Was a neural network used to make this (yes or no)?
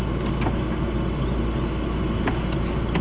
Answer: no